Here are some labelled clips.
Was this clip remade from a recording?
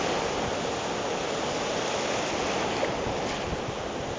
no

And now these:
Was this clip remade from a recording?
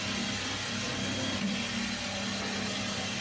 no